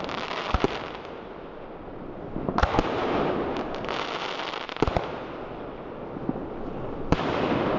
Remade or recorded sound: recorded